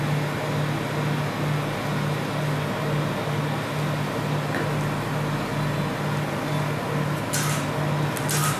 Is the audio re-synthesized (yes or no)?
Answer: no